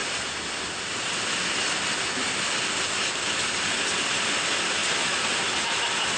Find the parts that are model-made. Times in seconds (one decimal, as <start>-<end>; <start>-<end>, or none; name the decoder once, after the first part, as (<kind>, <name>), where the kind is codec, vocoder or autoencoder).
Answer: none